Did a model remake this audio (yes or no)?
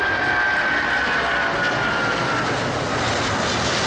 no